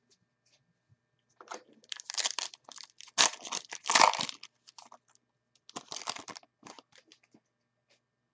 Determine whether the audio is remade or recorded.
recorded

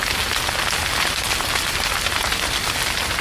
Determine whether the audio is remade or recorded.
recorded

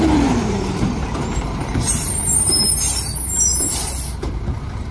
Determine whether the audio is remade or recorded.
remade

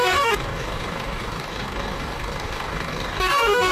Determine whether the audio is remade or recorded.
remade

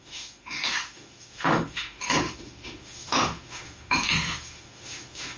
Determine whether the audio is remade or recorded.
remade